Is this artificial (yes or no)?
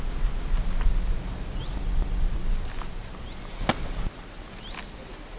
no